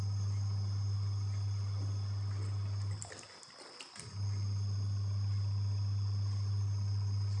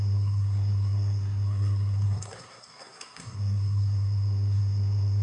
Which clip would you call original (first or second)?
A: first